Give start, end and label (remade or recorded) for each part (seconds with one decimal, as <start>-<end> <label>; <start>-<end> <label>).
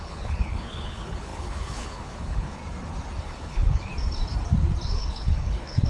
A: 0.0-2.6 remade; 2.6-3.2 recorded; 3.2-3.9 remade; 3.9-4.9 recorded; 4.9-5.9 remade